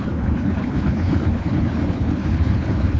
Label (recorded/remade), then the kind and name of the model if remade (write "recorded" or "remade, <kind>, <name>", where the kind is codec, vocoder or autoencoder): remade, codec, HILCodec